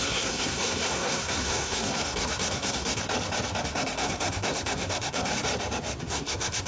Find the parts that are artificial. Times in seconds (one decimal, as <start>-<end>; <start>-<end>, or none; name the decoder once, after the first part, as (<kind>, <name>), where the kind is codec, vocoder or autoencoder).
0.0-3.0 (codec, SNAC); 3.6-5.3; 6.0-6.7